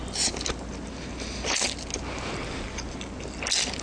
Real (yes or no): yes